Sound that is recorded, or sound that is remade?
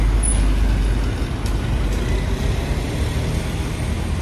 recorded